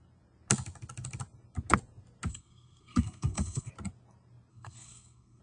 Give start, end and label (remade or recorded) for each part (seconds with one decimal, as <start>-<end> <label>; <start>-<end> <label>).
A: 0.0-2.3 recorded; 2.3-3.7 remade; 3.7-4.5 recorded; 4.5-5.4 remade